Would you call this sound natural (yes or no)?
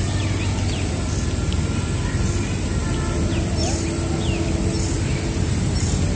yes